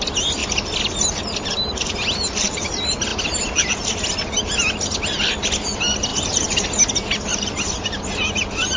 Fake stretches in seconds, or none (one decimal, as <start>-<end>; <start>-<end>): 3.1-3.9; 6.1-6.8